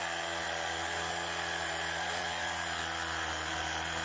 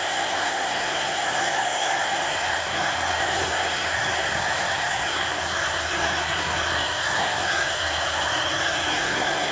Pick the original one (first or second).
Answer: first